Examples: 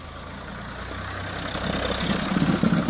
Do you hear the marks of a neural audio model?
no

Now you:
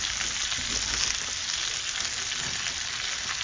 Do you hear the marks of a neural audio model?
no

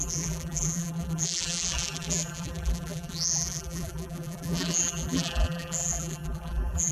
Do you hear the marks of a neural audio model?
yes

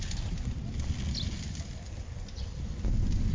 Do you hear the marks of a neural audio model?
no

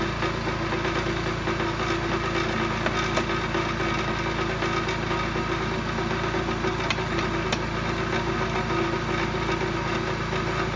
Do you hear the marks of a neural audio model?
no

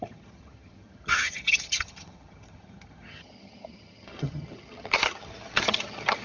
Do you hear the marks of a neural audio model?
yes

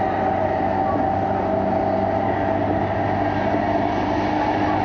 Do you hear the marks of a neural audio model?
no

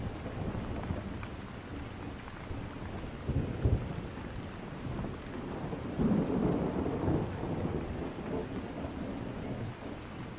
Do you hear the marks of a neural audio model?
no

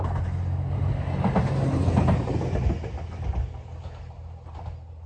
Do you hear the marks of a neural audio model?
no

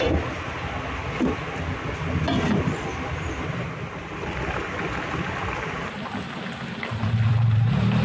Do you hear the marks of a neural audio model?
no